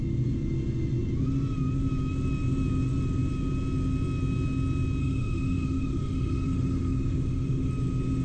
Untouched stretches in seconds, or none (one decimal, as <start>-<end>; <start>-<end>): 0.0-5.0; 7.7-8.2